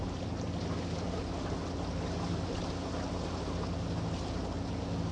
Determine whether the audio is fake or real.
real